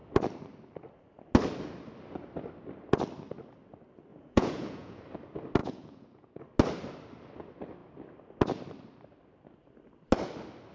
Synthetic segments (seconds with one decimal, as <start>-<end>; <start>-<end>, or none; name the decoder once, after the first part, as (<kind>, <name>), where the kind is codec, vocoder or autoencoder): 4.1-5.0 (vocoder, Vocos); 5.6-6.4